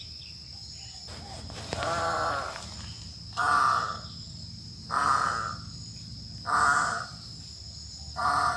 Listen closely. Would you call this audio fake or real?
real